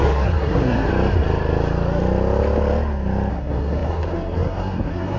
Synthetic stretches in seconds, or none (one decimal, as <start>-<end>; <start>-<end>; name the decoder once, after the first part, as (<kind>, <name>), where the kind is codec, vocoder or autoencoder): 0.0-0.9 (codec, SNAC); 3.3-5.2